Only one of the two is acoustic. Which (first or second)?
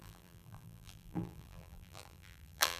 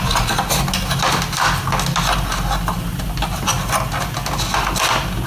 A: second